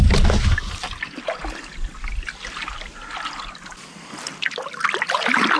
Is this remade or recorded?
recorded